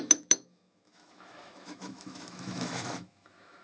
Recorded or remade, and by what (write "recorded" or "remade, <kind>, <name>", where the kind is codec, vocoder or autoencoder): remade, autoencoder, DAC-VAE